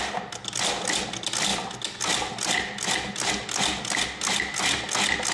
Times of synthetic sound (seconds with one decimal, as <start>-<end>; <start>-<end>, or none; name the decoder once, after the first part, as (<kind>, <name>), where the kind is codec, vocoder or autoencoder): none